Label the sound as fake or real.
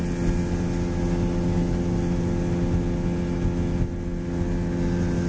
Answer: real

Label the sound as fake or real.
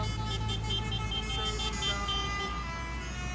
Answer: real